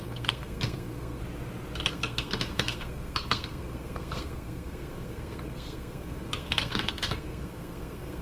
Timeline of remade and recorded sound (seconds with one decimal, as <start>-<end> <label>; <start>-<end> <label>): 0.0-1.2 remade; 1.2-1.9 recorded; 1.9-8.2 remade